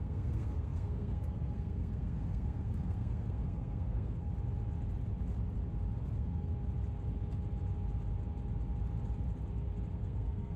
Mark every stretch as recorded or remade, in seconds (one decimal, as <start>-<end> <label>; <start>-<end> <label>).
0.0-4.3 remade; 4.3-6.0 recorded; 6.0-6.5 remade; 6.5-9.9 recorded; 9.9-10.6 remade